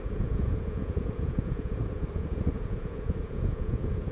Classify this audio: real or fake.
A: fake